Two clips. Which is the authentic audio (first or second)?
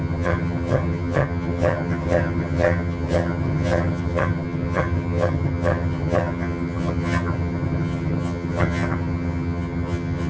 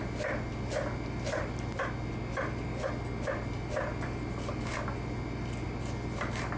second